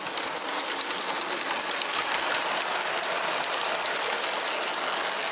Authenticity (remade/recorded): recorded